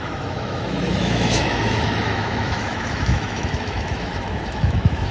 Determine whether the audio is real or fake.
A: fake